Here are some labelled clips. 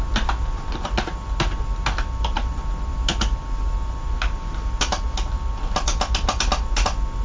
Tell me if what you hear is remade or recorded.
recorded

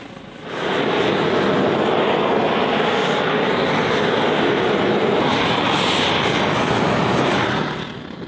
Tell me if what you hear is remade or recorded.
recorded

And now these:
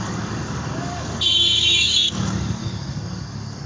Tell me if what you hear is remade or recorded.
remade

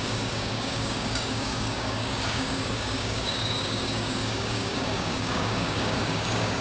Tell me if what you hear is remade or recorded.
remade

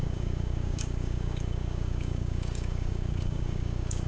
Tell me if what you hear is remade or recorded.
remade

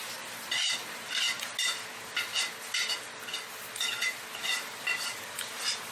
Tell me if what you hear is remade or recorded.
recorded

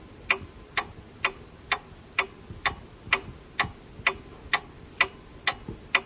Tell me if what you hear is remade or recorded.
recorded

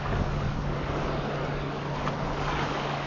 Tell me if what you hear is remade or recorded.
remade